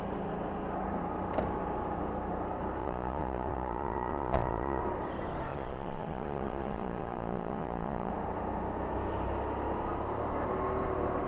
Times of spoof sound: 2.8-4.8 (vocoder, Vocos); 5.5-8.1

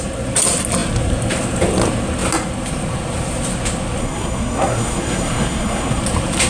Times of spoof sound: 4.0-6.0 (codec, SNAC)

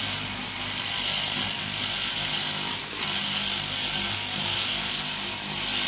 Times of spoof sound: 4.3-5.0 (codec, DAC)

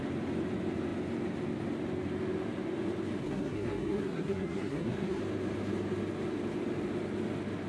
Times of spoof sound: 3.2-5.2 (codec, SNAC)

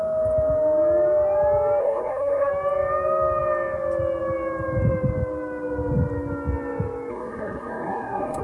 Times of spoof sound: 1.8-2.5 (codec, SNAC); 7.1-8.4

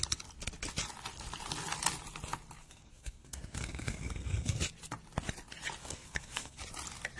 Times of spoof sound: 2.6-4.6 (codec, SNAC); 5.8-6.6